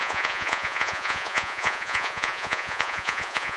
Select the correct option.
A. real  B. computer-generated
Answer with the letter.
B